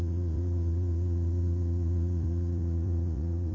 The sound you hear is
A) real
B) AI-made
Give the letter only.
B